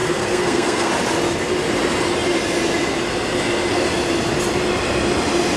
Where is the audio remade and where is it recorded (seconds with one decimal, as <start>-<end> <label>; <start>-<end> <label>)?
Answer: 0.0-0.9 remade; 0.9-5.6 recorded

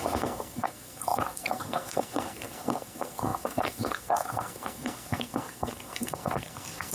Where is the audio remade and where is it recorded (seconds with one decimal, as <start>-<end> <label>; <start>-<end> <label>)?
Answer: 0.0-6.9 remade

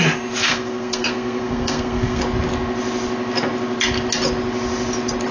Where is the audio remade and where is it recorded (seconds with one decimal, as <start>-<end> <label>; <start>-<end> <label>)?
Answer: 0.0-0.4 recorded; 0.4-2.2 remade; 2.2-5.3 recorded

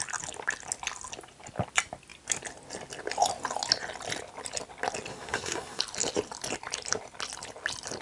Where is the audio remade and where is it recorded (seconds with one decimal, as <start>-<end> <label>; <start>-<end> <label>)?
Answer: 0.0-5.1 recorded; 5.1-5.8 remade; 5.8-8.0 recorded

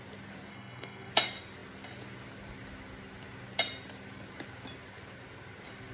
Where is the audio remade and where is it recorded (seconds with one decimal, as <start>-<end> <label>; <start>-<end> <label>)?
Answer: 0.0-0.5 recorded; 0.5-1.1 remade; 1.1-5.9 recorded

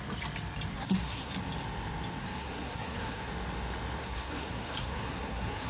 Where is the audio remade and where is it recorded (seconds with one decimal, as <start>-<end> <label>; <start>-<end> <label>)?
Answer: 0.0-0.7 recorded; 0.7-1.4 remade; 1.4-2.2 recorded; 2.2-3.3 remade; 3.3-4.0 recorded; 4.0-5.7 remade